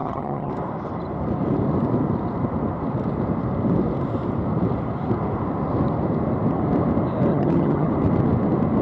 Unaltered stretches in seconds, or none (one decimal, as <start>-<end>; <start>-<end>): 0.5-7.3; 7.9-8.8